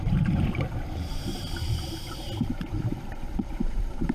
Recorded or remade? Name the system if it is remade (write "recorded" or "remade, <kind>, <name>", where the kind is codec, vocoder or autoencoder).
remade, vocoder, BigVGAN v2